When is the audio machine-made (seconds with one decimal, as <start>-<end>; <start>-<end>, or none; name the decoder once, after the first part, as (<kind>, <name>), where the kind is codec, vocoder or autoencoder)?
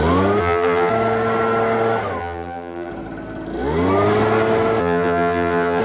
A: 0.4-0.9 (vocoder, BigVGAN v2); 2.2-2.9; 4.8-5.8